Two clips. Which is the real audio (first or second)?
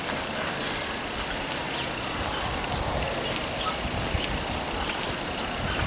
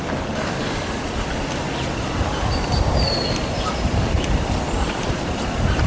first